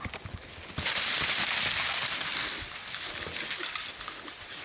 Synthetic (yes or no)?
no